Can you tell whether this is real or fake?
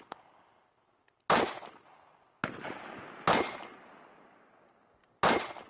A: real